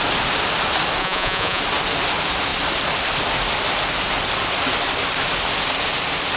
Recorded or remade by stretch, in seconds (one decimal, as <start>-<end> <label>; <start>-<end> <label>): 0.0-1.0 recorded; 1.0-1.6 remade; 1.6-6.4 recorded